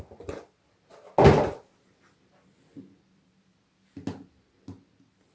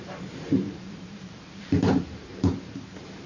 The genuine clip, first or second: first